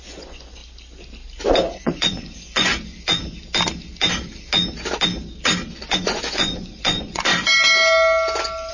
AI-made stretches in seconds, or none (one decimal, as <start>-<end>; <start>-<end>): 0.0-0.6; 1.7-2.7; 5.7-7.3